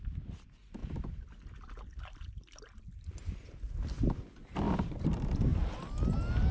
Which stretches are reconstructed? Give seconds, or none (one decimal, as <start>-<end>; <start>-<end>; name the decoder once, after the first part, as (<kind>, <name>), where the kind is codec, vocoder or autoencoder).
none